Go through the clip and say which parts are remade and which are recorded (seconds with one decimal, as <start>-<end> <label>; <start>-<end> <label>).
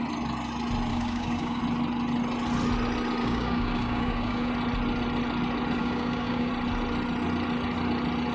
0.0-0.9 recorded; 0.9-1.6 remade; 1.6-3.2 recorded; 3.2-4.5 remade; 4.5-5.8 recorded; 5.8-6.5 remade; 6.5-8.3 recorded